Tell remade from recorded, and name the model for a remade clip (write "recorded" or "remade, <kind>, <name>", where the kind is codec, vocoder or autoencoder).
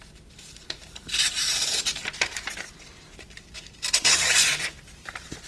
remade, vocoder, BigVGAN v2